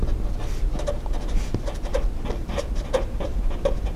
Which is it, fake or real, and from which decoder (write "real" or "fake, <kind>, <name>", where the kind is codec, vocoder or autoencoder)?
real